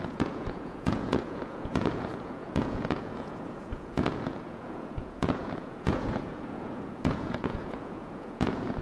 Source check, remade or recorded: remade